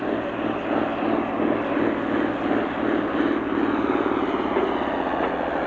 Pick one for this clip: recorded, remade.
recorded